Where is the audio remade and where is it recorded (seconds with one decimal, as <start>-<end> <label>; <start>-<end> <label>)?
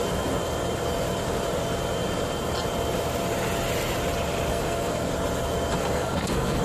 0.0-4.5 recorded; 4.5-5.1 remade; 5.1-5.8 recorded; 5.8-6.6 remade